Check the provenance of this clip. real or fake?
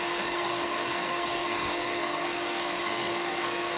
fake